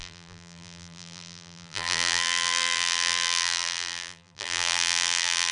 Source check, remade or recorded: remade